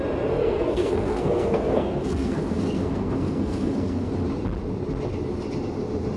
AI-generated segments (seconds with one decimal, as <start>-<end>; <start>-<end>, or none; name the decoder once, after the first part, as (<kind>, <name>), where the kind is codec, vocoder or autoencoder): 0.4-4.1 (codec, SNAC)